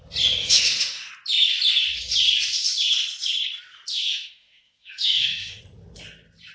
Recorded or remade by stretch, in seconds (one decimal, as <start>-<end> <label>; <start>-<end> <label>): 0.0-0.4 recorded; 0.4-1.1 remade; 1.1-3.9 recorded; 3.9-5.6 remade; 5.6-6.5 recorded